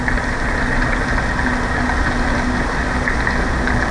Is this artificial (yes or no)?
no